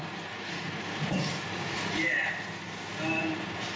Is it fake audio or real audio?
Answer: real